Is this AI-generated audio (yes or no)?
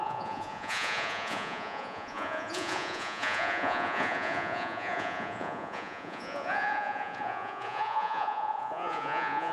yes